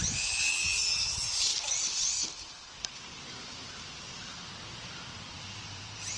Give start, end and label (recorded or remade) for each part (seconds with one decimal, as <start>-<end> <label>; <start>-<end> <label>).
0.0-1.5 remade; 1.5-2.7 recorded; 2.7-4.3 remade; 4.3-5.4 recorded; 5.4-6.2 remade